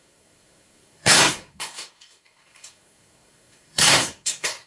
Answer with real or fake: fake